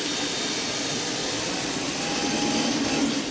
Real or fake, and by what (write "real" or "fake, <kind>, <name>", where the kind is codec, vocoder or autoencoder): real